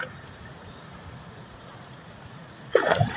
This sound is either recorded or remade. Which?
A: remade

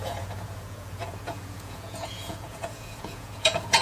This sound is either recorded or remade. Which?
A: remade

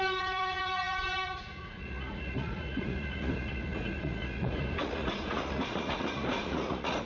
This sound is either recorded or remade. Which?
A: remade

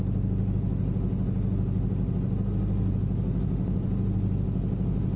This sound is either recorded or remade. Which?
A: recorded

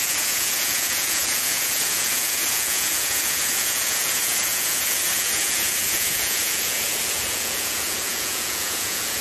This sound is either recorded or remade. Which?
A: remade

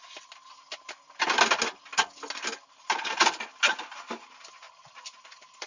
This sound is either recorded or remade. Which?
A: recorded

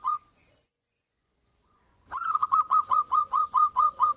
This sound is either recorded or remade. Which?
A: remade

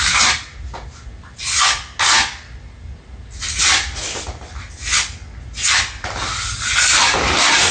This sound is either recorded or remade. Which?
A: recorded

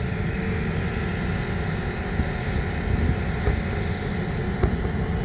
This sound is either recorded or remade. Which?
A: recorded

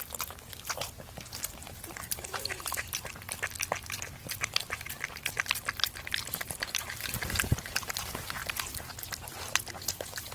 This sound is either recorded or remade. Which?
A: recorded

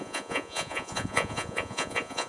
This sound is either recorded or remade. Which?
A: remade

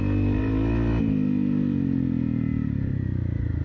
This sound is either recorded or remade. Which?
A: recorded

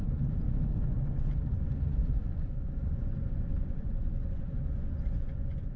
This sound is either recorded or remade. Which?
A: remade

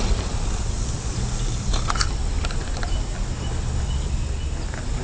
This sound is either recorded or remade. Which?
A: recorded